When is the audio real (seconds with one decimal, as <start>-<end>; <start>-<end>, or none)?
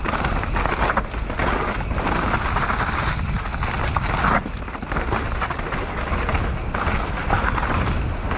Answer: 0.0-7.2